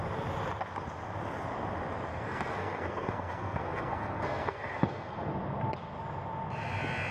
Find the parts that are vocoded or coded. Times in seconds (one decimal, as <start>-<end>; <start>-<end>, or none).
2.1-5.3